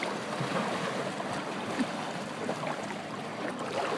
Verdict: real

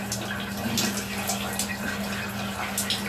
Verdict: real